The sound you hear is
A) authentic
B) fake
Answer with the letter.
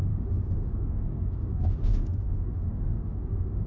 B